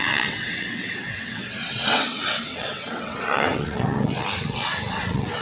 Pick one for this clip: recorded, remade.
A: remade